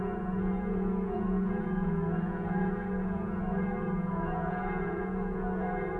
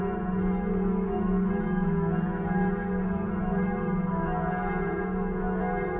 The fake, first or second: first